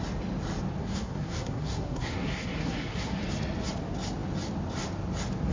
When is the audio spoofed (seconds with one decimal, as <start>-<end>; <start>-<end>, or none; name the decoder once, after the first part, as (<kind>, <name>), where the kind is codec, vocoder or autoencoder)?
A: 0.8-3.2 (codec, SNAC)